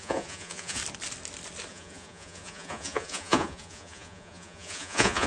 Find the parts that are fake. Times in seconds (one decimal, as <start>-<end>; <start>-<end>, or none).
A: 0.0-0.8; 1.7-5.3

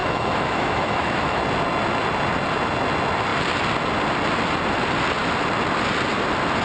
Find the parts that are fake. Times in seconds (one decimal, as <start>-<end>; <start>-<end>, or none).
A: 0.0-1.4